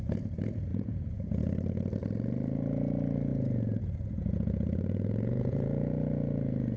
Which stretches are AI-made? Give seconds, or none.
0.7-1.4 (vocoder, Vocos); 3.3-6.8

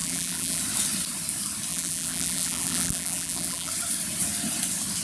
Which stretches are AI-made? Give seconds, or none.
0.0-0.6 (vocoder, BigVGAN v2); 1.7-3.7